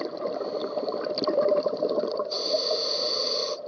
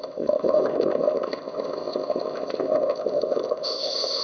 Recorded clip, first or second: first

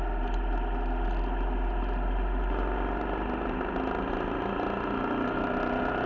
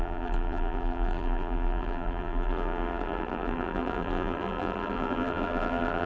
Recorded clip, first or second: first